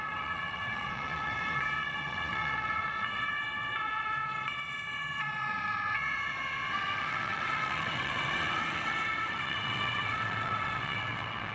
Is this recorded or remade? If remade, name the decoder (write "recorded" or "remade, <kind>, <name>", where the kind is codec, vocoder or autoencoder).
remade, vocoder, WaveNeXt